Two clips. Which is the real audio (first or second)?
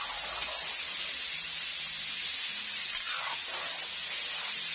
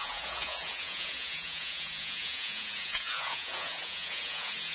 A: first